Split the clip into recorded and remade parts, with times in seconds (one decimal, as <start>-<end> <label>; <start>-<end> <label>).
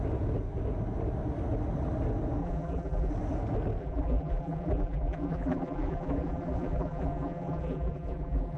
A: 0.0-2.4 recorded; 2.4-3.1 remade; 3.1-3.8 recorded; 3.8-8.6 remade